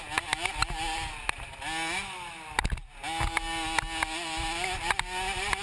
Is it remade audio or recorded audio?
recorded